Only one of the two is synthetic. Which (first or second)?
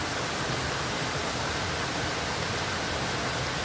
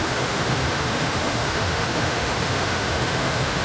second